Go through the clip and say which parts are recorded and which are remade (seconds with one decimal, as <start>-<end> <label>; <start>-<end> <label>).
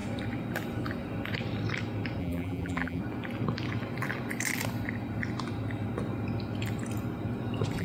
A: 0.0-2.2 recorded; 2.2-3.0 remade; 3.0-7.8 recorded